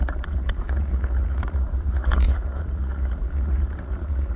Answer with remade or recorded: remade